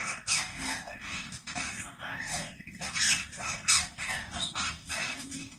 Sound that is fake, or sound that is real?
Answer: fake